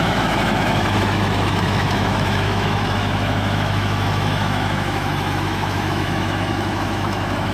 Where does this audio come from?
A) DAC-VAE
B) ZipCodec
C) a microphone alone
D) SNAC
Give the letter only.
A